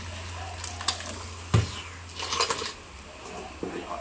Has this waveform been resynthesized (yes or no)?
no